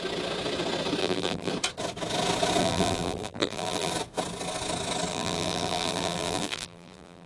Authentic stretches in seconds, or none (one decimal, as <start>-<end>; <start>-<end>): 0.0-1.0; 1.5-2.6; 3.9-5.1